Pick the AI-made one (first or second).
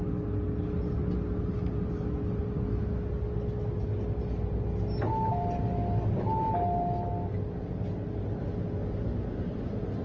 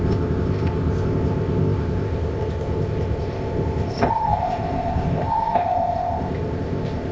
second